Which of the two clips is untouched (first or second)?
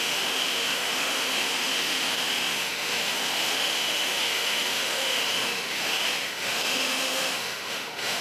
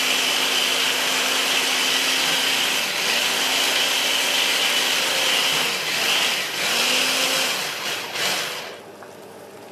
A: second